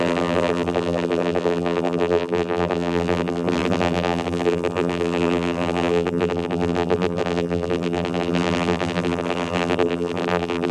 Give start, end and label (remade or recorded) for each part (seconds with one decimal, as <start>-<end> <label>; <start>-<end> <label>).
0.0-10.7 remade